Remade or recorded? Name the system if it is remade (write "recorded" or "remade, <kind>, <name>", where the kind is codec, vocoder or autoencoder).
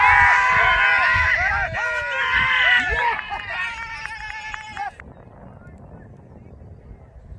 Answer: recorded